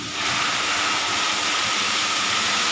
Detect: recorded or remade recorded